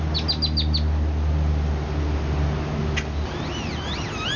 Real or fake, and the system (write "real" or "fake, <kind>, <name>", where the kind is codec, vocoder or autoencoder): real